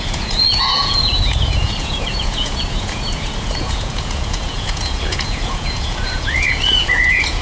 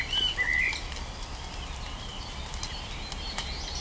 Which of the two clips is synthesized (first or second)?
first